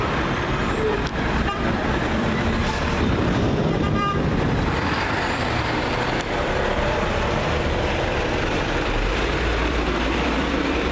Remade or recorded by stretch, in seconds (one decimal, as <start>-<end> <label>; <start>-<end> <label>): 0.0-10.9 remade